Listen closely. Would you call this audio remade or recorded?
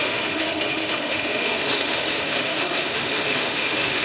remade